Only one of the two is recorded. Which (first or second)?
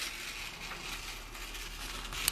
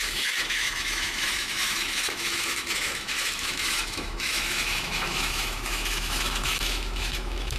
first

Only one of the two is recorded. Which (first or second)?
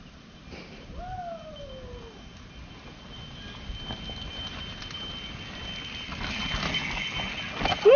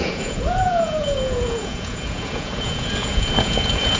first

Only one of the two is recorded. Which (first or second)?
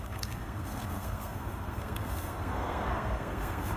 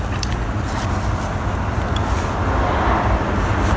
second